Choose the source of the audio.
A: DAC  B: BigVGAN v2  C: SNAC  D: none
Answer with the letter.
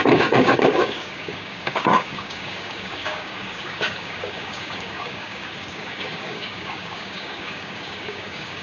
A